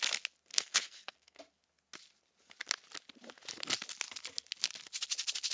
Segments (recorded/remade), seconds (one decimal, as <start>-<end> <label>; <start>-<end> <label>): 0.0-0.5 recorded; 0.5-1.4 remade; 1.4-5.5 recorded

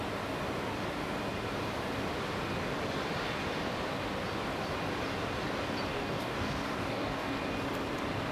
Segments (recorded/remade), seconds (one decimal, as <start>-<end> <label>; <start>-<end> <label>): 0.0-5.9 recorded; 5.9-7.4 remade; 7.4-8.3 recorded

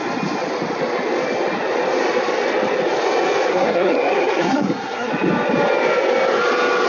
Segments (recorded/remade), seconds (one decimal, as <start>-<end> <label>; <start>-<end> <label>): 0.0-3.5 recorded; 3.5-5.1 remade; 5.1-6.9 recorded